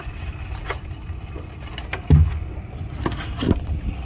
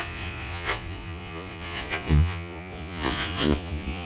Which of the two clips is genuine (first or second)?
first